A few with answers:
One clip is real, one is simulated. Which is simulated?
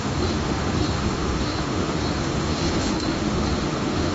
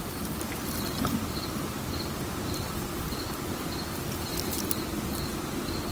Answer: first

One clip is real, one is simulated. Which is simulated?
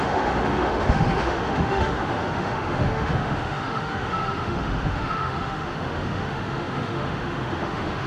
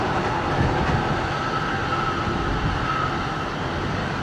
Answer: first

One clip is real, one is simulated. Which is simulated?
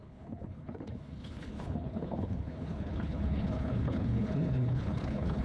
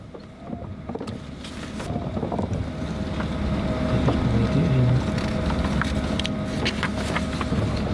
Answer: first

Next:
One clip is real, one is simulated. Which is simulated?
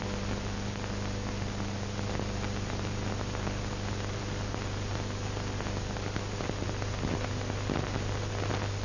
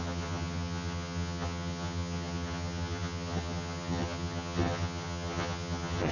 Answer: second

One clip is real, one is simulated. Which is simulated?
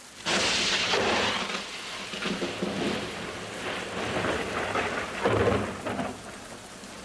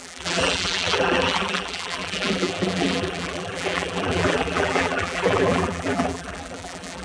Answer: second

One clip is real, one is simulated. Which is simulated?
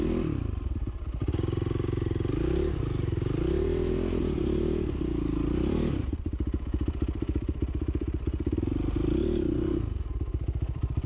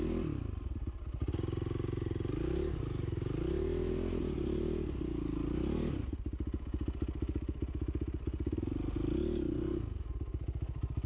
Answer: first